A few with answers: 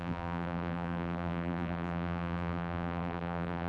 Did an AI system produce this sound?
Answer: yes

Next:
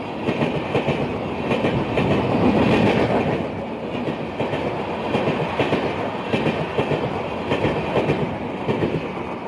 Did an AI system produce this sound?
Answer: no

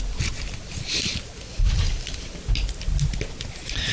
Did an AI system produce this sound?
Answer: no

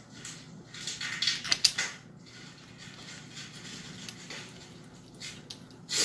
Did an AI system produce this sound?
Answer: no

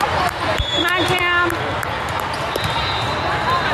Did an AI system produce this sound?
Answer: no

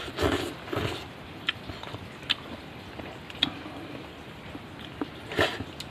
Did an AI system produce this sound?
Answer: no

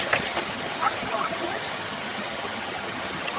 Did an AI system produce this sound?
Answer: yes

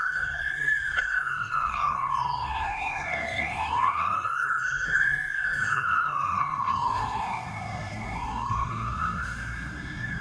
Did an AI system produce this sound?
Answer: yes